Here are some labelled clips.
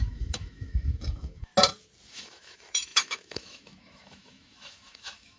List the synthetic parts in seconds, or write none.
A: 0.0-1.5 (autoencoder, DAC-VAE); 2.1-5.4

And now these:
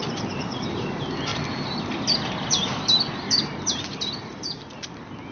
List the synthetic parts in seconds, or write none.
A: none